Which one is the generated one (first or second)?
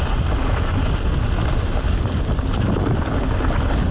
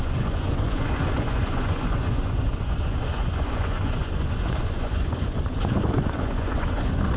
second